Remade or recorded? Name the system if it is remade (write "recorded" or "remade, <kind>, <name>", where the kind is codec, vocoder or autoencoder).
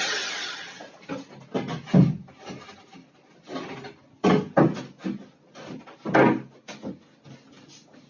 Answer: recorded